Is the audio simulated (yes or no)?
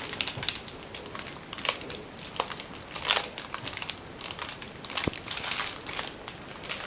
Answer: no